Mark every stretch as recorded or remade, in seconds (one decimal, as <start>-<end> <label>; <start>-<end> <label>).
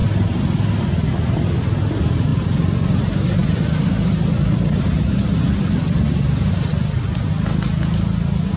0.0-8.6 recorded